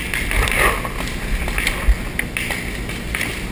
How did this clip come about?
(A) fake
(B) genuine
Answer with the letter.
B